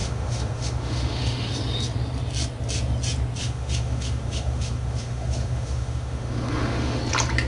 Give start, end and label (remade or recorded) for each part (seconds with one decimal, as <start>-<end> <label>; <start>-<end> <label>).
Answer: 0.0-1.5 remade; 1.5-3.4 recorded; 3.4-7.0 remade; 7.0-7.5 recorded